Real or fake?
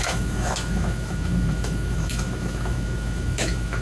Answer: fake